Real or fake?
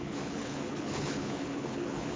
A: fake